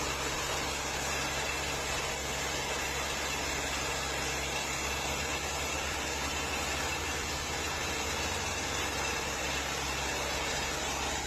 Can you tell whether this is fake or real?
real